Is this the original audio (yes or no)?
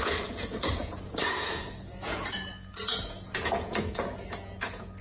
no